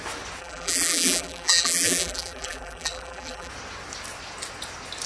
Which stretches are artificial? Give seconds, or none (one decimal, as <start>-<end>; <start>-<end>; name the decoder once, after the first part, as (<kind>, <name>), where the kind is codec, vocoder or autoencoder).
0.4-3.5 (vocoder, BigVGAN v2)